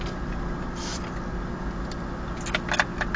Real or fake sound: real